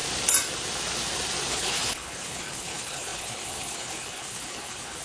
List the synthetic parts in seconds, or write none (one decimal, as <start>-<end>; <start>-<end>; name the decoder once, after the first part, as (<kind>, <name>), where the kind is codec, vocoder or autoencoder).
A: 1.5-5.0 (codec, HILCodec)